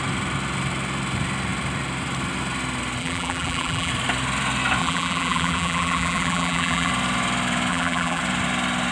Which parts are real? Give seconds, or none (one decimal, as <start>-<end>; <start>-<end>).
0.0-3.0; 3.9-4.8; 6.9-7.7; 8.2-8.9